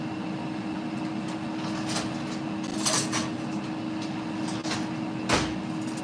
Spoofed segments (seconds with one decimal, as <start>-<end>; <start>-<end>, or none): none